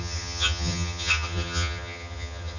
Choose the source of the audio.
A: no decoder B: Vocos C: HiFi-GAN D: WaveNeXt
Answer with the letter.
C